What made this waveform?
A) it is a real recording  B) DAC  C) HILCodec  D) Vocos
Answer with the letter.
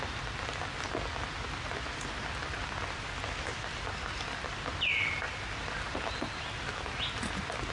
A